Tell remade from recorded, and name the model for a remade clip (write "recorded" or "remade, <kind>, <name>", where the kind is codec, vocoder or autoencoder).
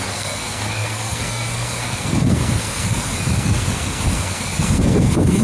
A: remade, codec, SNAC